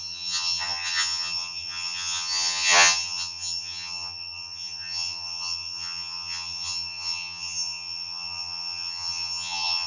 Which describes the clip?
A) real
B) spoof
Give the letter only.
B